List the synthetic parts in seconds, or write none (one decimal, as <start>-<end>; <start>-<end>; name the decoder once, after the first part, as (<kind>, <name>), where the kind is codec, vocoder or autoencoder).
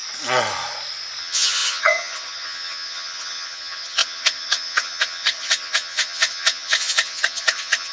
1.2-7.9 (vocoder, HiFi-GAN)